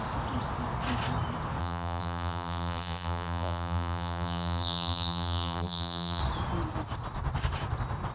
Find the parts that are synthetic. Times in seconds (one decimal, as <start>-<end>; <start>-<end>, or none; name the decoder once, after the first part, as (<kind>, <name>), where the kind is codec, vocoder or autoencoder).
1.6-6.2 (vocoder, BigVGAN v2)